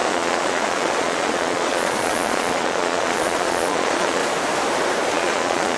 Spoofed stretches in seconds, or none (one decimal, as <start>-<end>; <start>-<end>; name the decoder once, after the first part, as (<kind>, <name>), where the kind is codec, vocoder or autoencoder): 0.0-4.2 (vocoder, Vocos); 5.1-5.8

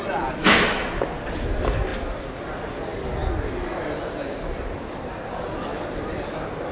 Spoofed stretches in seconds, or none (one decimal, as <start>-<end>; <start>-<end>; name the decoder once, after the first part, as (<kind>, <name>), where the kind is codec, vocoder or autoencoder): 0.4-0.9 (autoencoder, DAC-VAE)

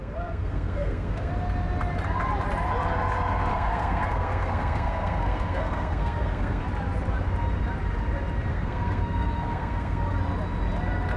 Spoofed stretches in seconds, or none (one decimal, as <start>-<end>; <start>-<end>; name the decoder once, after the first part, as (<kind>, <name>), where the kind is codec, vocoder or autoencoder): 0.0-1.3 (codec, SNAC); 3.5-6.6; 8.5-10.0

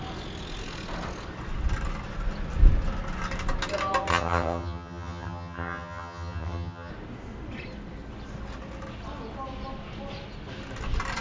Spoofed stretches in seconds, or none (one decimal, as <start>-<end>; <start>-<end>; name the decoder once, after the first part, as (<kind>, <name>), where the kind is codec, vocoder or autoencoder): 4.1-6.9 (vocoder, HiFi-GAN)

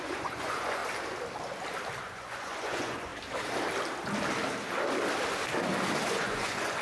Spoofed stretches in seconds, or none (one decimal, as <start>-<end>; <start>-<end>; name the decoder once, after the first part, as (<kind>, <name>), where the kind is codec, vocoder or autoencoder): 0.0-0.8 (vocoder, Vocos); 2.0-3.1; 6.1-6.8

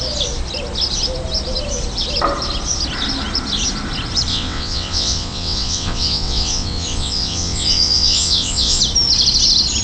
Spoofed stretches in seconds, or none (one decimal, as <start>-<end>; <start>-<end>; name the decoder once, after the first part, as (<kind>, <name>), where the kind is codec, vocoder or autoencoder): 4.3-8.8 (vocoder, WaveNeXt)

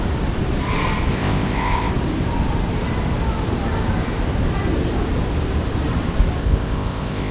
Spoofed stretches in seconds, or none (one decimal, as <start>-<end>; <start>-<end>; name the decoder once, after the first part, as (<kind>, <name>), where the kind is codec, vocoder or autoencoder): 1.1-1.9 (codec, ZipCodec); 6.4-7.3

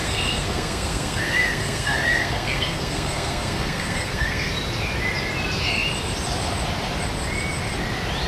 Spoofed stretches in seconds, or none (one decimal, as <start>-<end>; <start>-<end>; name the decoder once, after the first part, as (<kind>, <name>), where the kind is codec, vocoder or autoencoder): 0.0-4.5 (codec, SNAC)